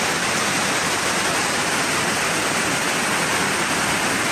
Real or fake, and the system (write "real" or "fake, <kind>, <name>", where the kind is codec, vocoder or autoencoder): real